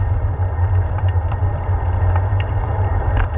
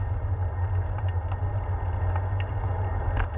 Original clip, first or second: second